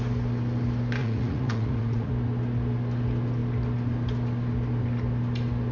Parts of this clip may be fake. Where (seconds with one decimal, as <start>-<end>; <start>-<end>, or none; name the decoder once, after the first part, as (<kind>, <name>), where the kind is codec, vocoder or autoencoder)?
1.0-2.1 (vocoder, Vocos)